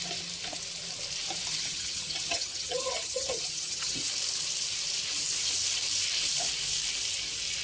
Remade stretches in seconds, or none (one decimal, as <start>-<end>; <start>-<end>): 1.5-4.0